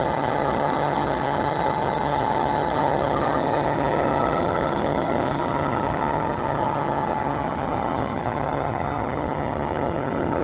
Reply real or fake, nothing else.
fake